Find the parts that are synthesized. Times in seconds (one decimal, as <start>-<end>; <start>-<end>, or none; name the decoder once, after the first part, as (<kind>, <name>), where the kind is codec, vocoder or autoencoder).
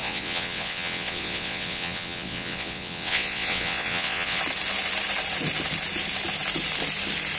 0.0-4.4 (vocoder, WaveNeXt)